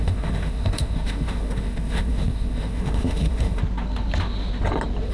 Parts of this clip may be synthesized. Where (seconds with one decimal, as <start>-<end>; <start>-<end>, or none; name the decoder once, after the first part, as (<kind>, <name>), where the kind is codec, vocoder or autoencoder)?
0.0-3.6 (autoencoder, DAC-VAE)

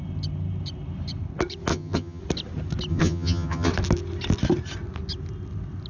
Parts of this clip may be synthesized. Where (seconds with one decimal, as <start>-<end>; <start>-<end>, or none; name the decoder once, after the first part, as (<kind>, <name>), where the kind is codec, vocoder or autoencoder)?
1.7-2.2 (vocoder, HiFi-GAN); 2.9-3.7

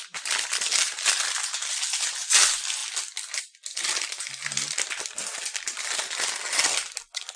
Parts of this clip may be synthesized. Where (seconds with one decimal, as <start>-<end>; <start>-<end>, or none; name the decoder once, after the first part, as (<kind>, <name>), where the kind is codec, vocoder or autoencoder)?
none

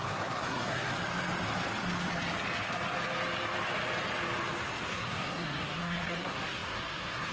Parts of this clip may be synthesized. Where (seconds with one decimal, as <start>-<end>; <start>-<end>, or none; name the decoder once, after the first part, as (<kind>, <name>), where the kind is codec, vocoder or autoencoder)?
0.0-0.9 (codec, SNAC); 4.7-7.3

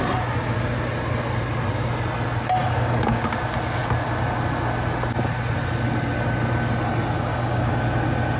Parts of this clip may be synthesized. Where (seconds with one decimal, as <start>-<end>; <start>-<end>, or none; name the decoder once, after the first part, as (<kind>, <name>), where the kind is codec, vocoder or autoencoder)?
2.6-3.2 (codec, DAC); 7.3-7.8